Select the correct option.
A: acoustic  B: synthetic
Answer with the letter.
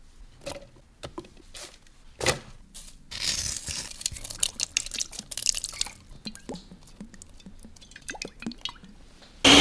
A